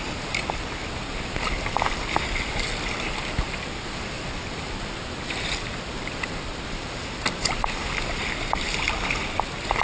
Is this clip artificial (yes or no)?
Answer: yes